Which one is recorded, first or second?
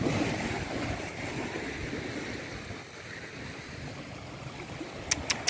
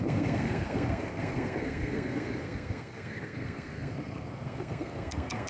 first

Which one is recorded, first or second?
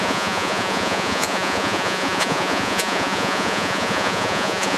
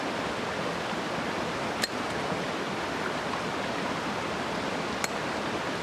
second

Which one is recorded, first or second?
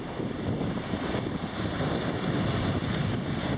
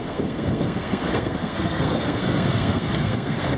first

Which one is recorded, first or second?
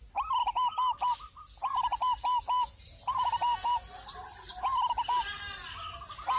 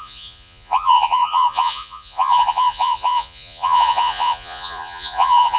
first